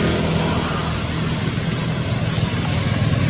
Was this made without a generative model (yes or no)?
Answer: yes